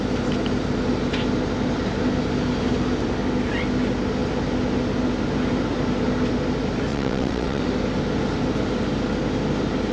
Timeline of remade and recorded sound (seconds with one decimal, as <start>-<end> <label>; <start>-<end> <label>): 0.0-6.9 recorded; 6.9-7.6 remade; 7.6-9.9 recorded